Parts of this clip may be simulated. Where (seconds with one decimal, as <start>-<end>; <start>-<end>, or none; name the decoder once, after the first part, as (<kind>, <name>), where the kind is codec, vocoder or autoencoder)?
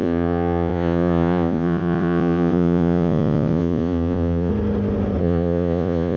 0.0-4.5 (vocoder, Vocos); 5.2-6.2